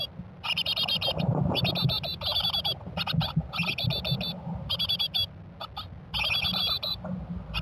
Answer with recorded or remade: recorded